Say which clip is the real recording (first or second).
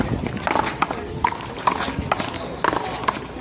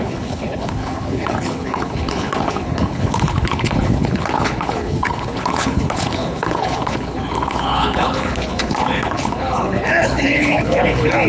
first